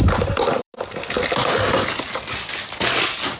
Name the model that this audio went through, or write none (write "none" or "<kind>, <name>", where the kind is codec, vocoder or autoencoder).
none